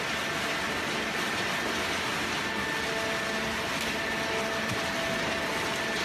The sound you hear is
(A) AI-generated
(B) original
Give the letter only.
B